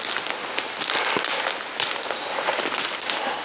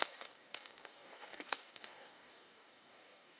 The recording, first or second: first